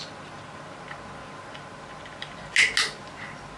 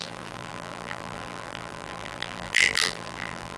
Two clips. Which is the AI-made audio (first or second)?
second